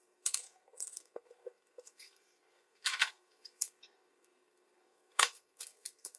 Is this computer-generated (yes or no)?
yes